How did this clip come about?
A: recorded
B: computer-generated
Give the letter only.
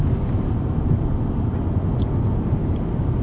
A